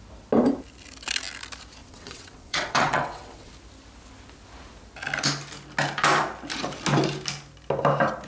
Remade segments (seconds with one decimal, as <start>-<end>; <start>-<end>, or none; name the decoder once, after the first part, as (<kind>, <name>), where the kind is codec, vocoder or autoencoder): 1.8-3.5 (vocoder, WaveNeXt)